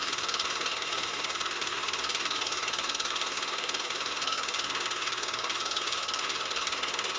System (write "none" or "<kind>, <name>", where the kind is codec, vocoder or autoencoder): codec, SNAC